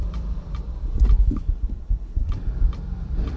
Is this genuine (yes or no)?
no